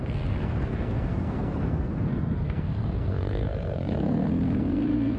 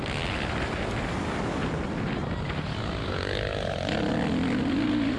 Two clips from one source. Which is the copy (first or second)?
first